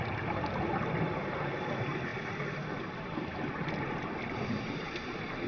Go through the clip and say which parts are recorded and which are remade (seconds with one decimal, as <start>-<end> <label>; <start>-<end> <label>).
0.0-5.5 recorded